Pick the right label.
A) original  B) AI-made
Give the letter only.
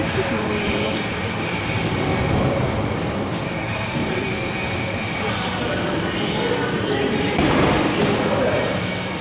B